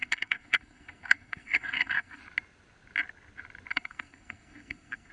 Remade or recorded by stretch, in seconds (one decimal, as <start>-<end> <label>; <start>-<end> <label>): 0.0-2.2 remade; 2.2-3.7 recorded; 3.7-5.1 remade